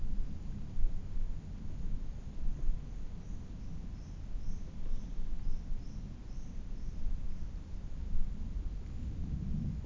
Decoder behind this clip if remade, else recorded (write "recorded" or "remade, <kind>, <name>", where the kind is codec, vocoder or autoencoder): recorded